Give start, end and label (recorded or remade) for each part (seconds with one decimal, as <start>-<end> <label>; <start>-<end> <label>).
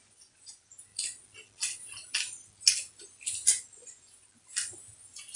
0.0-0.9 remade; 0.9-3.7 recorded; 3.7-4.2 remade; 4.2-4.9 recorded; 4.9-5.4 remade